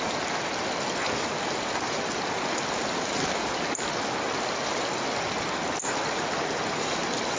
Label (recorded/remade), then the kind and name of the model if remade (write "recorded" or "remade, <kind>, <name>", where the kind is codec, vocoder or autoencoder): recorded